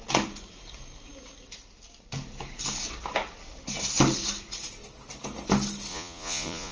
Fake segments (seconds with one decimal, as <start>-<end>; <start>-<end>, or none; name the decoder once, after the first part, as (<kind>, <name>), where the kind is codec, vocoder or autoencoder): 5.9-6.7 (vocoder, Vocos)